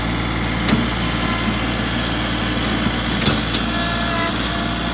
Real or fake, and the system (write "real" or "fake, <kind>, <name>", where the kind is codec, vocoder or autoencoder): real